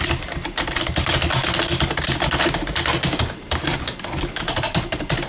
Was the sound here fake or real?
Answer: real